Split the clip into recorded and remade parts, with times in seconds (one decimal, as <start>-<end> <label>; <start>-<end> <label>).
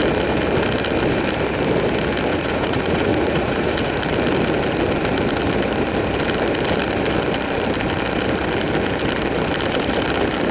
0.0-2.3 recorded; 2.3-4.0 remade; 4.0-10.5 recorded